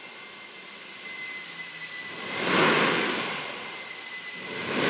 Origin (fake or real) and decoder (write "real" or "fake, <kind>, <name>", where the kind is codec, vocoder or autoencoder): real